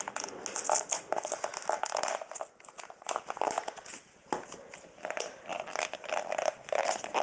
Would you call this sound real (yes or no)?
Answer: yes